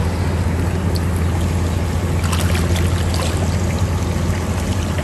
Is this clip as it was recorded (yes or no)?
yes